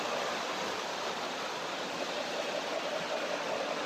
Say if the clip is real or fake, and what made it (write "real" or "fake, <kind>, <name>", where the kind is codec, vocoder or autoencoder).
real